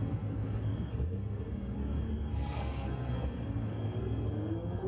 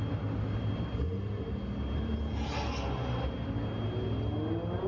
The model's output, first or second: first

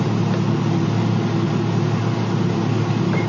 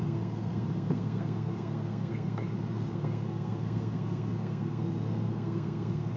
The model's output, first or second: second